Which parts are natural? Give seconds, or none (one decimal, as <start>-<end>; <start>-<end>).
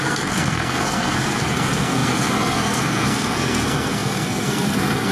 none